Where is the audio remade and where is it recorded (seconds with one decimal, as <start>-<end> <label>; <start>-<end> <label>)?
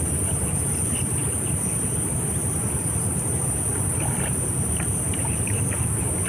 0.0-6.3 recorded